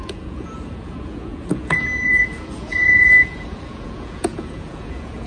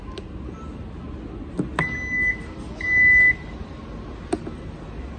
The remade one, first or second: first